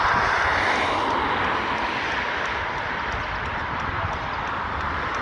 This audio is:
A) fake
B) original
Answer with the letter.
B